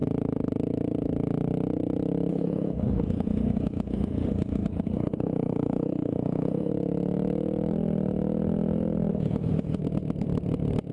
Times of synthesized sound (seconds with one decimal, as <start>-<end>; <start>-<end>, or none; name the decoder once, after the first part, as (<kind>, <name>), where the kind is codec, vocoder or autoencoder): 2.3-6.7 (autoencoder, DAC-VAE); 9.1-9.8